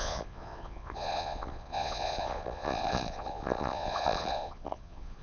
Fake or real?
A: fake